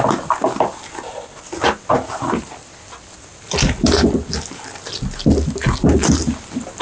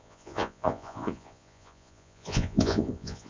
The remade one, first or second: second